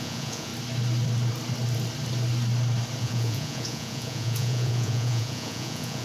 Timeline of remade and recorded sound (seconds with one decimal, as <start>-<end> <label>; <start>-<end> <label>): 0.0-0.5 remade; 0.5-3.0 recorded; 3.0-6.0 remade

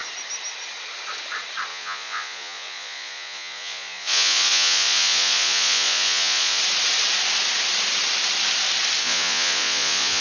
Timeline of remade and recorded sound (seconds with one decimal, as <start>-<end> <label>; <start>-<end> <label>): 0.0-1.7 recorded; 1.7-6.6 remade; 6.6-9.0 recorded; 9.0-10.2 remade

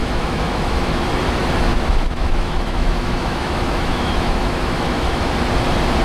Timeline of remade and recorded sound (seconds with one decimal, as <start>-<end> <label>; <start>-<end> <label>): 0.0-1.0 remade; 1.0-1.7 recorded; 1.7-5.3 remade; 5.3-6.0 recorded

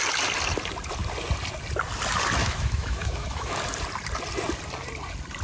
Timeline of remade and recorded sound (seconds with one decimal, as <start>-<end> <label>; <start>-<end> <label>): 0.0-2.4 recorded; 2.4-3.6 remade; 3.6-5.4 recorded

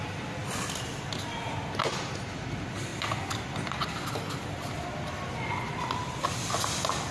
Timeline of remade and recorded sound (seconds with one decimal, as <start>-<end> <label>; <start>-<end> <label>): 0.0-7.1 recorded